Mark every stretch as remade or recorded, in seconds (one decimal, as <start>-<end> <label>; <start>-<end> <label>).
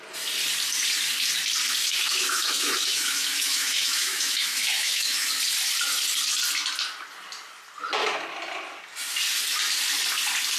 0.0-1.8 recorded; 1.8-5.3 remade; 5.3-10.6 recorded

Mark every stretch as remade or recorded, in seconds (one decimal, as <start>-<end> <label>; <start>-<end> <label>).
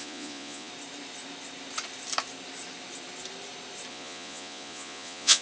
0.0-0.7 remade; 0.7-3.9 recorded; 3.9-5.4 remade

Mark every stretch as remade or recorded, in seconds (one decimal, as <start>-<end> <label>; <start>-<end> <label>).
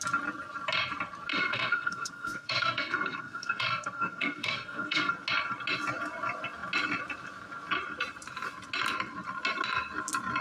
0.0-1.3 recorded; 1.3-5.1 remade; 5.1-10.4 recorded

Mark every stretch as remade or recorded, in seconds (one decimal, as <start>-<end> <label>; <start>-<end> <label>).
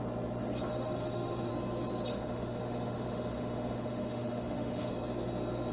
0.0-0.7 recorded; 0.7-1.5 remade; 1.5-2.1 recorded; 2.1-4.9 remade; 4.9-5.7 recorded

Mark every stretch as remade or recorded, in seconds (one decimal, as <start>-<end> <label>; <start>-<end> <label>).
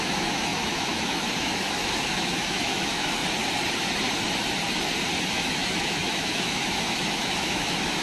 0.0-3.2 remade; 3.2-5.3 recorded; 5.3-8.0 remade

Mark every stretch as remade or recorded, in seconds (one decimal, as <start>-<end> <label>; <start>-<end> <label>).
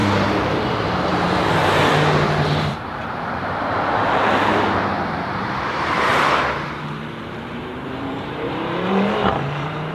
0.0-1.6 remade; 1.6-2.6 recorded; 2.6-6.1 remade; 6.1-7.2 recorded; 7.2-9.9 remade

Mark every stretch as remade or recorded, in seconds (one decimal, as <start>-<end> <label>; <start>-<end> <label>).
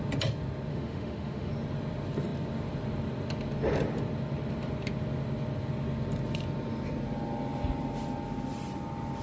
0.0-0.7 recorded; 0.7-1.5 remade; 1.5-9.2 recorded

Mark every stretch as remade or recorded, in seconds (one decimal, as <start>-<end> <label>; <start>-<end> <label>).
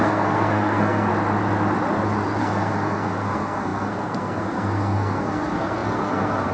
0.0-1.1 remade; 1.1-2.4 recorded; 2.4-6.5 remade